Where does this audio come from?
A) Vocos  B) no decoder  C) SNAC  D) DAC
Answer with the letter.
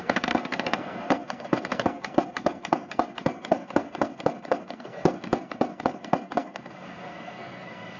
C